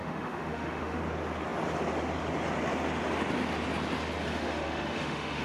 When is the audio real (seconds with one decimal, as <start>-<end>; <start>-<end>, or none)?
1.0-4.3